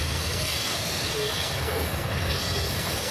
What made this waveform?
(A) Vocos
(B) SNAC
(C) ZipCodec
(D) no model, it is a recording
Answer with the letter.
B